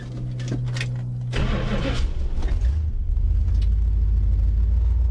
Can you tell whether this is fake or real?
real